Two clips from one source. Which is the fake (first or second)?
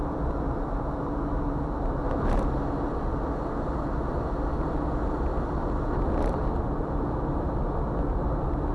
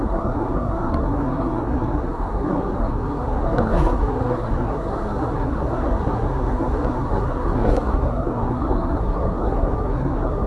second